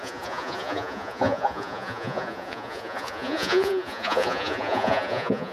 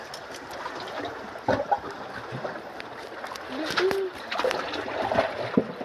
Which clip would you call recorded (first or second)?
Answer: second